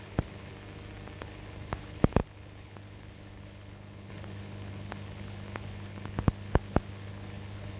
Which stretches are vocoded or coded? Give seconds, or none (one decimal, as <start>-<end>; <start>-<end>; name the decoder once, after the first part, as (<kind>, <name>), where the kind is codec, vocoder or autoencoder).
0.0-0.5 (codec, HILCodec); 1.2-7.8